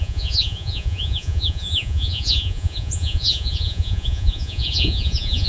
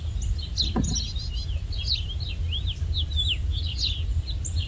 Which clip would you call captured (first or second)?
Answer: second